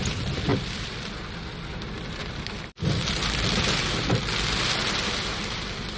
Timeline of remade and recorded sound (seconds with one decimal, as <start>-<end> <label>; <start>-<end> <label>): 0.0-0.5 recorded; 0.5-1.1 remade; 1.1-2.2 recorded; 2.2-6.0 remade